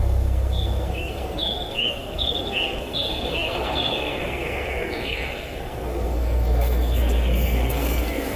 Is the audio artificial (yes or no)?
yes